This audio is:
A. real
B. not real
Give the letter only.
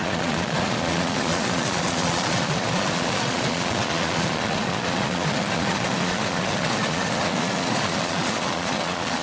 B